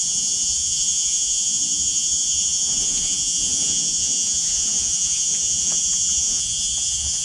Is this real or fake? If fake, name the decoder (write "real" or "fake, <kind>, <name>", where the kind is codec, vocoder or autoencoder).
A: fake, vocoder, Vocos